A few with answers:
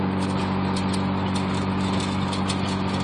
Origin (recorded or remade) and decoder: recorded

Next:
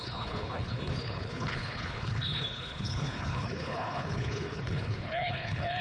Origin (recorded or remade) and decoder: remade, codec, HILCodec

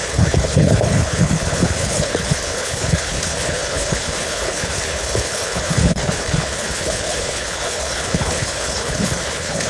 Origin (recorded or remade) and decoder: remade, codec, HILCodec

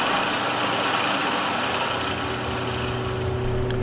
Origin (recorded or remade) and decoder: recorded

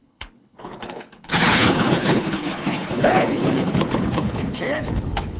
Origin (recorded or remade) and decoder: remade, codec, HILCodec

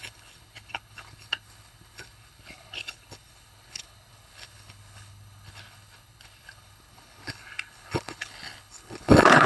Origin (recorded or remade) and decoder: remade, codec, HILCodec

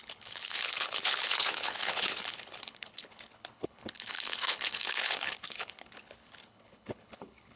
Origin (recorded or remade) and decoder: remade, codec, HILCodec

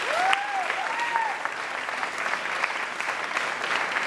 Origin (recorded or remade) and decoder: recorded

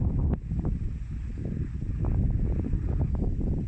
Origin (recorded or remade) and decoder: recorded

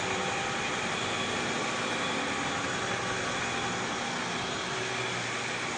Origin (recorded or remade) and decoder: recorded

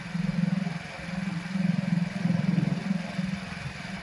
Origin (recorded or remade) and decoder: recorded